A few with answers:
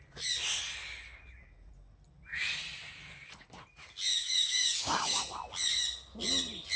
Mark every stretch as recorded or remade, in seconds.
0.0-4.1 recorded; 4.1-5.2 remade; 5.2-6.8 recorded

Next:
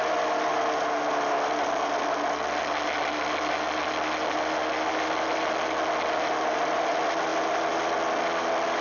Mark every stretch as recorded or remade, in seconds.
0.0-8.8 recorded

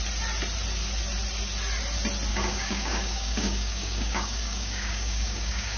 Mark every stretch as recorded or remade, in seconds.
0.0-2.3 recorded; 2.3-5.8 remade